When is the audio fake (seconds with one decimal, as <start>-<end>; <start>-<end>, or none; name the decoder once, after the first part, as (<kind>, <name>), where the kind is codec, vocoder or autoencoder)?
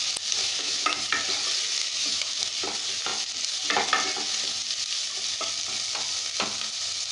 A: 0.4-1.0 (autoencoder, DAC-VAE); 1.8-2.5